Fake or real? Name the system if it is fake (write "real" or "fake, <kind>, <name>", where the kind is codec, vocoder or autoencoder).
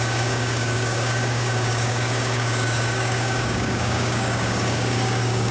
fake, codec, DAC